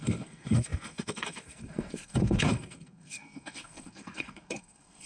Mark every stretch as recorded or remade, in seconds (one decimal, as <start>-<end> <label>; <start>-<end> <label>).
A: 0.0-5.1 remade